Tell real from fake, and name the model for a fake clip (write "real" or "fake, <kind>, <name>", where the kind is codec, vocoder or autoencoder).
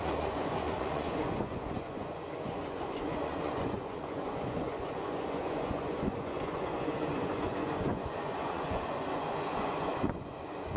fake, vocoder, Vocos